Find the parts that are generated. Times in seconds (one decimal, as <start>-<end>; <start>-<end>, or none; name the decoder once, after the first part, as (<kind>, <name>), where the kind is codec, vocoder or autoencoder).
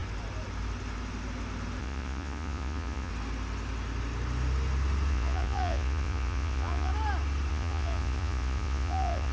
1.8-3.1 (vocoder, Vocos); 5.1-6.9; 7.5-9.3